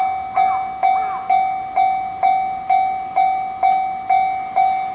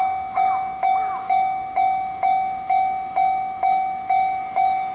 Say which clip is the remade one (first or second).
second